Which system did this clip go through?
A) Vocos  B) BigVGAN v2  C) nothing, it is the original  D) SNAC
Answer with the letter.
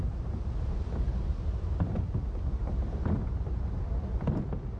B